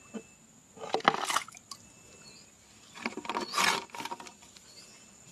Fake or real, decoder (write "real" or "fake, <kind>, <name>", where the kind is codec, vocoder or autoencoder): real